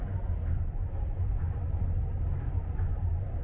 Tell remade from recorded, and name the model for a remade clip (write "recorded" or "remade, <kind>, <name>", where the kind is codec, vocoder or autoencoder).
recorded